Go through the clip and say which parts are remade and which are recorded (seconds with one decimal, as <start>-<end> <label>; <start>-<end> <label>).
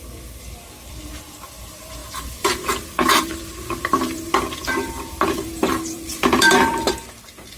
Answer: 0.0-2.0 recorded; 2.0-3.4 remade; 3.4-3.9 recorded; 3.9-6.9 remade; 6.9-7.6 recorded